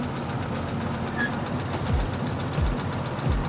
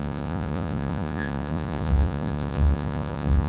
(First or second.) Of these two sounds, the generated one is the second